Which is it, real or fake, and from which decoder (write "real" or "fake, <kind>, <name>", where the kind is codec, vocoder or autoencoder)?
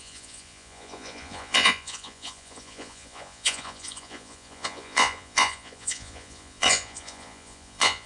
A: fake, vocoder, Vocos